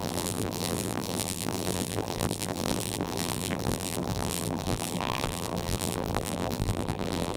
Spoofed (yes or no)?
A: yes